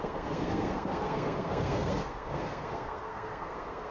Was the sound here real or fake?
fake